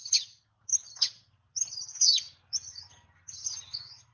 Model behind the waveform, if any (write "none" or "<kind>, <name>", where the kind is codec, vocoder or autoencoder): none